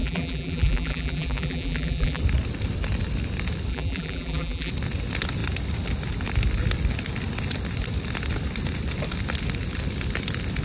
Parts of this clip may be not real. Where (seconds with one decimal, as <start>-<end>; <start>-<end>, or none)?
0.0-2.2; 3.7-4.7